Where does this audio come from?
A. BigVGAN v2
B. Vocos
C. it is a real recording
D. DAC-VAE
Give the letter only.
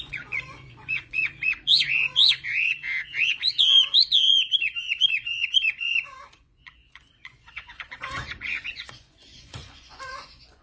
B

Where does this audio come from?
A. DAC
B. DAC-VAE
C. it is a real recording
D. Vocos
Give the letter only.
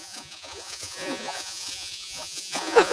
D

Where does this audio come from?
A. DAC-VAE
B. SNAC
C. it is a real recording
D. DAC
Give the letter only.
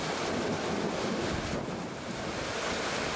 C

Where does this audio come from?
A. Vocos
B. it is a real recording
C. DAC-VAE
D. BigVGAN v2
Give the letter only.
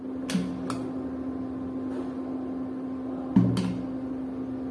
B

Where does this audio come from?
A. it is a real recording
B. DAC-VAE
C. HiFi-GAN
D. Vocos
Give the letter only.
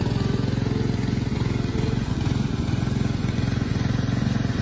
D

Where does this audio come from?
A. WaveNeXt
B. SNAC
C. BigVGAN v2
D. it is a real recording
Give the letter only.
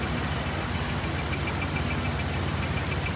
D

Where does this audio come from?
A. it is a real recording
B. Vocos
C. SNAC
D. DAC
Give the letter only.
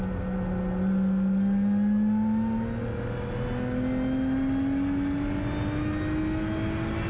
A